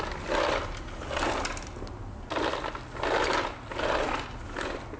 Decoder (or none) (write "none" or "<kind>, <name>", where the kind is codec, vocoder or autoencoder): none